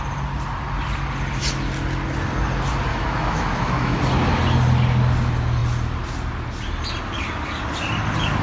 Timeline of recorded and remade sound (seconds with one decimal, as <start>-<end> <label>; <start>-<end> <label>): 0.0-2.9 recorded; 2.9-4.0 remade; 4.0-8.4 recorded